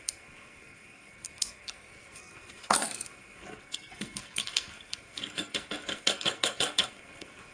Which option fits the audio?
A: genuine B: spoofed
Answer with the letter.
B